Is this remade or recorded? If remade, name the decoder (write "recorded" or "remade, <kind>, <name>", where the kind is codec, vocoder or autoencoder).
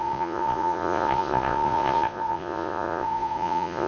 remade, vocoder, Vocos